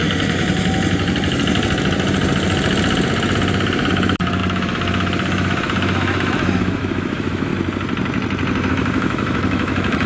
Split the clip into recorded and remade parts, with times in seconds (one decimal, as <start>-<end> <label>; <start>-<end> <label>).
0.0-3.9 recorded; 3.9-7.5 remade; 7.5-8.7 recorded; 8.7-10.1 remade